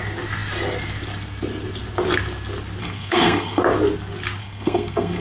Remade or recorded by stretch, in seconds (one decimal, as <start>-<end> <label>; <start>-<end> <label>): 0.0-2.8 recorded; 2.8-3.6 remade; 3.6-4.4 recorded; 4.4-5.2 remade